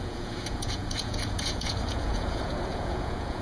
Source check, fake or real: fake